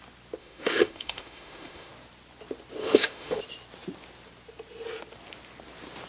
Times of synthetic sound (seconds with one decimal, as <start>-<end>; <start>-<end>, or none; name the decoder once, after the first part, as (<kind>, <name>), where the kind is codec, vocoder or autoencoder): 0.4-1.9 (autoencoder, DAC-VAE); 2.8-3.4